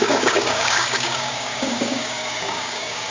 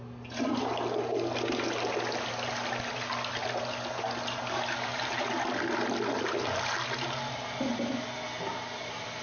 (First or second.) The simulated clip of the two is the first